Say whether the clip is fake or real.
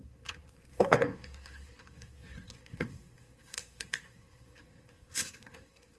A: fake